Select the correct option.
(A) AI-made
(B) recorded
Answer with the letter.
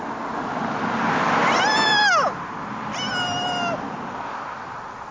B